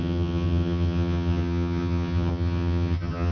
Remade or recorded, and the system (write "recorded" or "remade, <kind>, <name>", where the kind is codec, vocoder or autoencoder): remade, vocoder, HiFi-GAN